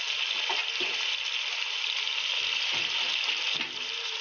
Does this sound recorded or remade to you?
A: recorded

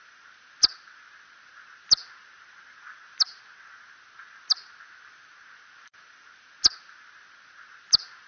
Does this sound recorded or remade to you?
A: recorded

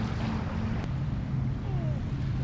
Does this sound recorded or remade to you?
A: recorded